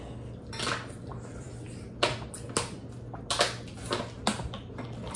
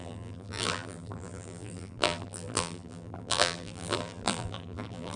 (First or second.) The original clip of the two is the first